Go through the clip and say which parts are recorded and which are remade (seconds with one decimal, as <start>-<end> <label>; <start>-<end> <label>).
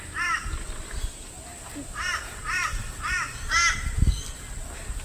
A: 0.0-5.0 recorded